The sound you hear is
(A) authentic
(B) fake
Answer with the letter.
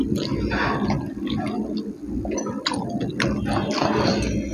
A